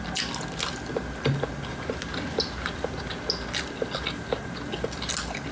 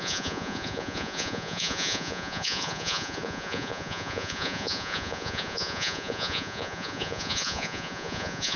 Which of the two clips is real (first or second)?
first